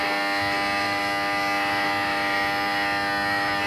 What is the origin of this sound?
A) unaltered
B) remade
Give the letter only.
B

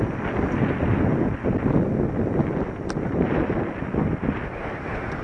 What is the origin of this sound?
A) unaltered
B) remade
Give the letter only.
A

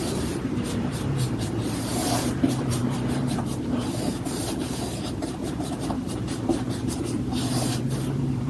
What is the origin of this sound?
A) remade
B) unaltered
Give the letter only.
A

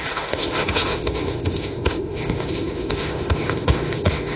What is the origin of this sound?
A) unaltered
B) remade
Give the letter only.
B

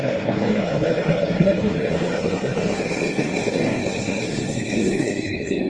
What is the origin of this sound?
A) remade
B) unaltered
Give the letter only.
A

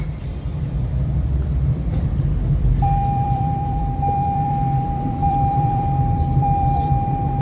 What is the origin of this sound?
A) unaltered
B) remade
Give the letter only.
B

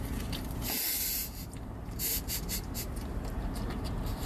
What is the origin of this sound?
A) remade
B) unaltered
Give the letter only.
A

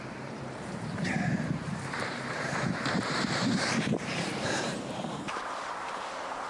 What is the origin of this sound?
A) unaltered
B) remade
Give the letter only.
B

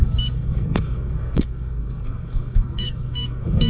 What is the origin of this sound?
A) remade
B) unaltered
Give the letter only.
A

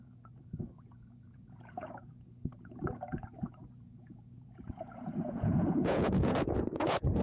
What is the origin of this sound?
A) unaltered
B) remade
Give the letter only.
B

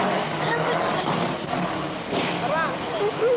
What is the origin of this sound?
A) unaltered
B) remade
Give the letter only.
A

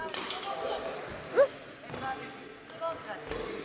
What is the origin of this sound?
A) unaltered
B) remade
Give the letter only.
A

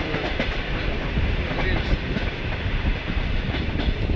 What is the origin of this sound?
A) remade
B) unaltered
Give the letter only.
A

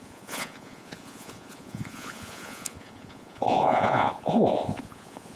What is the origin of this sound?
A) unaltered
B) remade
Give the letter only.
B